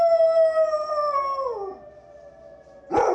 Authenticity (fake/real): real